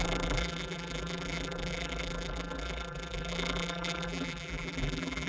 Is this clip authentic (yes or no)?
no